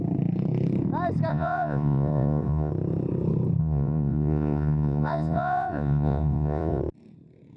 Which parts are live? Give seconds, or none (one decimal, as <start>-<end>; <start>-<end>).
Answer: 0.0-1.3; 2.7-3.6; 6.8-7.6